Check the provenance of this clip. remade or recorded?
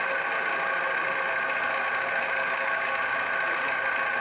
recorded